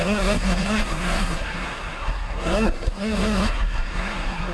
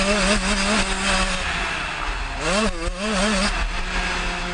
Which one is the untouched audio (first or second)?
second